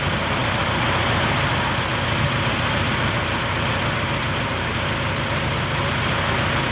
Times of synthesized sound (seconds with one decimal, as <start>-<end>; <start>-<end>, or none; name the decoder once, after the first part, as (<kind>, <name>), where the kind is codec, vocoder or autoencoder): none